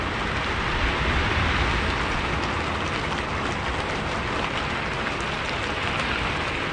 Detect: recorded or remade recorded